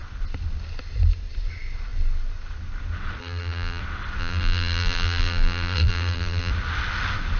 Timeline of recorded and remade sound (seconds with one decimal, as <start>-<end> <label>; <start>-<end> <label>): 0.0-3.2 recorded; 3.2-3.8 remade; 3.8-4.2 recorded; 4.2-6.5 remade; 6.5-7.4 recorded